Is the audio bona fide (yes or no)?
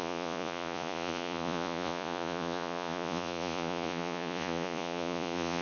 no